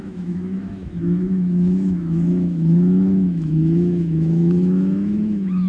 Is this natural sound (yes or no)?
no